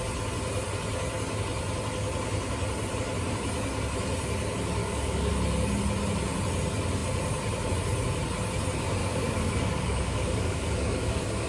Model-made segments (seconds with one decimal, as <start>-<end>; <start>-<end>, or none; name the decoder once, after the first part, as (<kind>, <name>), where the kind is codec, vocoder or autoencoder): 4.8-5.3 (codec, DAC); 9.0-11.5

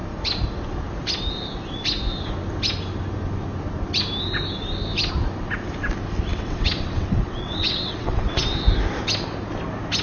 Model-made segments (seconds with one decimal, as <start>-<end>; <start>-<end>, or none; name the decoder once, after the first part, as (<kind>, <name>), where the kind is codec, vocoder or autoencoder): 6.3-8.4 (vocoder, WaveNeXt)